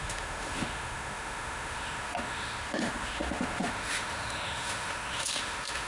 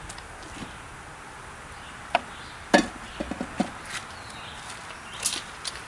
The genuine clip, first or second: second